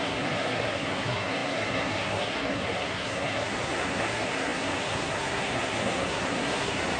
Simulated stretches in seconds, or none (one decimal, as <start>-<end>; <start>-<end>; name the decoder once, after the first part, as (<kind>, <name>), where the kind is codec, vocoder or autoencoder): 0.0-7.0 (codec, SNAC)